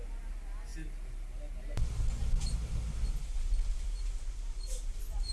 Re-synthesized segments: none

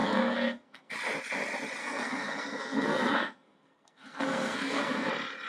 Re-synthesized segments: 0.0-0.9 (codec, SNAC); 1.8-5.1

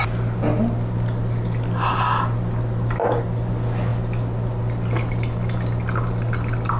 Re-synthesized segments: none

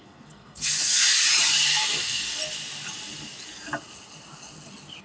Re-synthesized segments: 0.0-1.0 (codec, SNAC); 1.7-2.4